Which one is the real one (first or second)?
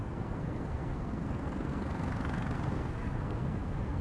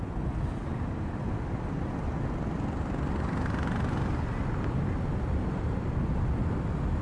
second